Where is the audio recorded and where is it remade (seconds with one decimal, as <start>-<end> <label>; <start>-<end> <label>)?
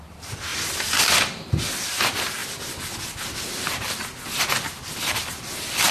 0.0-2.4 remade; 2.4-5.0 recorded; 5.0-5.9 remade